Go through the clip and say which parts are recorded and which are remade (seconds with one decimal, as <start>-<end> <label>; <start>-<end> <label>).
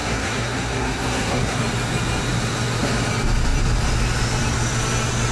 0.0-1.6 remade; 1.6-5.3 recorded